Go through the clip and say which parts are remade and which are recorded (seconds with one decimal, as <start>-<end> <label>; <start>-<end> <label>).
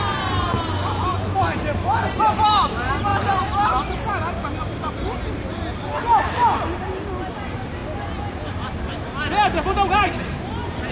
0.0-3.1 remade; 3.1-7.3 recorded; 7.3-7.8 remade; 7.8-9.9 recorded; 9.9-10.9 remade